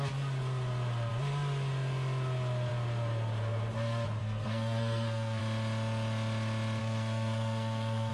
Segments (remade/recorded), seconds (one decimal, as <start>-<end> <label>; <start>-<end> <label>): 0.0-4.2 recorded; 4.2-5.4 remade; 5.4-6.8 recorded; 6.8-8.1 remade